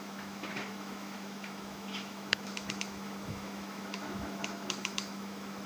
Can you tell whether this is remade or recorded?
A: remade